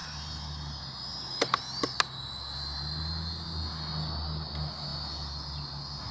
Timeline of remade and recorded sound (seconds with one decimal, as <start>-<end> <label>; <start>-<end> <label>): 0.0-6.1 recorded